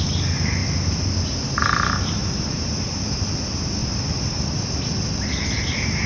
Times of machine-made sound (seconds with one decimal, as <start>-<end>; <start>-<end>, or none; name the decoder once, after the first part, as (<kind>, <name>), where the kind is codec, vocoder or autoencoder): 2.2-3.1 (vocoder, BigVGAN v2); 3.8-4.9